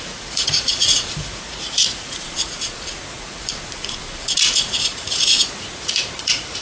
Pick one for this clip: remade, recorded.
remade